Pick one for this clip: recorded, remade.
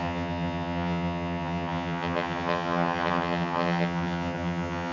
remade